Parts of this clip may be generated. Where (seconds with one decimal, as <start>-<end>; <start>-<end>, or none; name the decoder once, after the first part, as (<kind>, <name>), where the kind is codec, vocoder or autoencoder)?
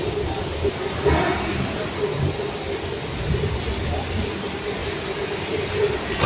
none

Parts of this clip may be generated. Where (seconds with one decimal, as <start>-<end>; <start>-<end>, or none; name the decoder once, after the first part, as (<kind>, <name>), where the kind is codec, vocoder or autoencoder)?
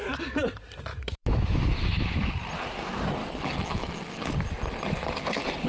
0.9-2.3 (autoencoder, DAC-VAE); 3.2-4.3